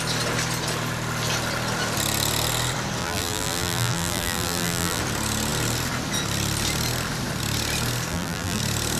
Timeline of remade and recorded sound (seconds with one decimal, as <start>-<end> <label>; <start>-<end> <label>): 0.0-3.0 recorded; 3.0-5.0 remade; 5.0-8.1 recorded; 8.1-8.6 remade; 8.6-9.0 recorded